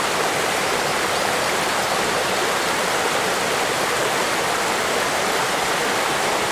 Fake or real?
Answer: real